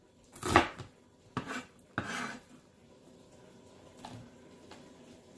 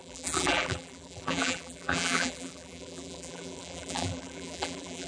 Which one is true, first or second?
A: first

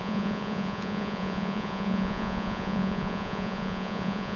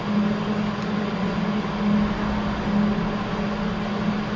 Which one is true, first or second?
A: second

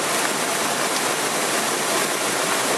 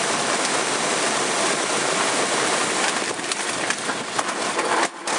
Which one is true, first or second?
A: first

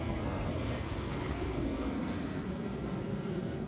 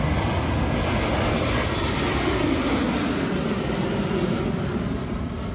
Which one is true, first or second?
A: second